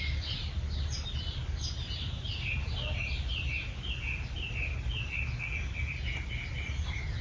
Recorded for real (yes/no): yes